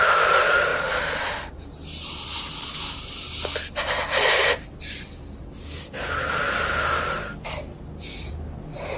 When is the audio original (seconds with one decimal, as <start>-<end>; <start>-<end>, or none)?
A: 0.0-9.0